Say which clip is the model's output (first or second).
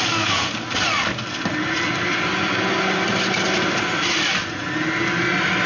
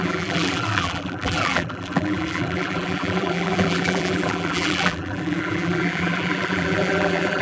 second